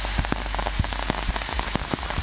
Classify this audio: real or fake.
real